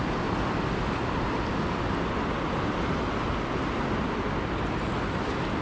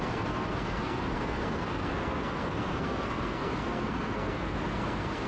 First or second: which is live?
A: first